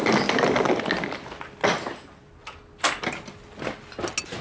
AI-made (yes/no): no